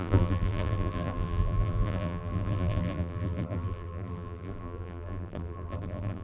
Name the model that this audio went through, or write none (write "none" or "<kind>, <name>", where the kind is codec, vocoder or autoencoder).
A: vocoder, BigVGAN v2